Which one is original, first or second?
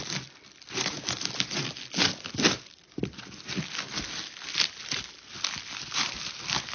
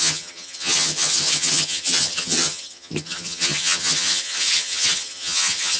first